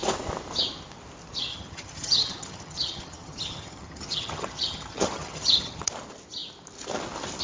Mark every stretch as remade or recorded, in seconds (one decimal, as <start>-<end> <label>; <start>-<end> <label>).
0.0-1.5 recorded; 1.5-5.9 remade; 5.9-7.4 recorded